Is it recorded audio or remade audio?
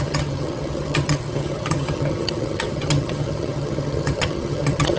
remade